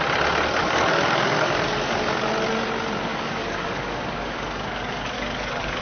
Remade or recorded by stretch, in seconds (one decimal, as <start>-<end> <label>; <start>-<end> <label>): 0.0-0.6 recorded; 0.6-2.3 remade; 2.3-3.1 recorded; 3.1-5.8 remade

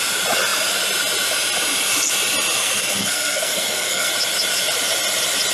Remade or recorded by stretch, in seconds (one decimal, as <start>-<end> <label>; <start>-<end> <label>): 0.0-2.6 recorded; 2.6-4.1 remade; 4.1-5.5 recorded

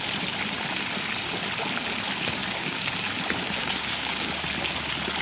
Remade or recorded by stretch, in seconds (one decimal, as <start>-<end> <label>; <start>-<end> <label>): 0.0-2.4 recorded; 2.4-2.9 remade; 2.9-3.6 recorded; 3.6-4.3 remade; 4.3-5.2 recorded

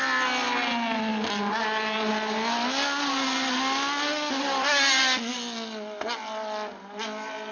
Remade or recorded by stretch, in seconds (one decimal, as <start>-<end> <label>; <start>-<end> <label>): 0.0-7.5 recorded

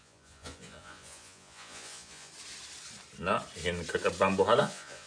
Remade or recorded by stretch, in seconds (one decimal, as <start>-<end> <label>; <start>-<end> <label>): 0.0-2.3 remade; 2.3-4.6 recorded; 4.6-5.1 remade

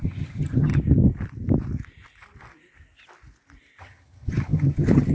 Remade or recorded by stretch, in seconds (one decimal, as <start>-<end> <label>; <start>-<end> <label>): 0.0-0.7 remade; 0.7-3.8 recorded; 3.8-5.1 remade

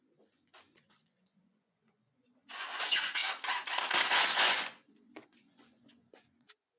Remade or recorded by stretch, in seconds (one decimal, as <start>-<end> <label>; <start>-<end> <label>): 0.0-3.2 remade; 3.2-4.1 recorded; 4.1-6.8 remade